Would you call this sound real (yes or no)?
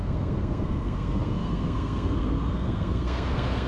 no